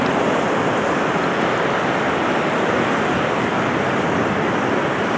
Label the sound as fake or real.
real